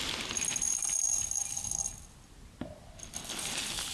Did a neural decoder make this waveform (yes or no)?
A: no